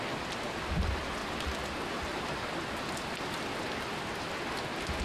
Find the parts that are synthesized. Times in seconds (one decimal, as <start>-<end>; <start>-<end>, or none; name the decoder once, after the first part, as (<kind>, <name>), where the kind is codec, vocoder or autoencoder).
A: 1.2-4.2 (vocoder, BigVGAN v2)